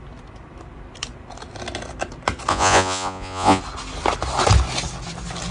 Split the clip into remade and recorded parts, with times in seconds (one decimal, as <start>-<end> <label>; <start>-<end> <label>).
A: 0.0-2.5 recorded; 2.5-3.6 remade; 3.6-5.5 recorded